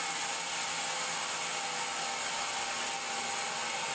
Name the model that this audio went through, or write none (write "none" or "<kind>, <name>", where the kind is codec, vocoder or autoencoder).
none